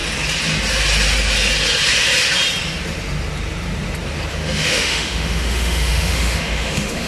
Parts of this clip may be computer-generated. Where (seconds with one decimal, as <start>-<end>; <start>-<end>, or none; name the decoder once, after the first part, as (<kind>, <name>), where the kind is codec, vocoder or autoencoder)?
4.3-7.1 (autoencoder, DAC-VAE)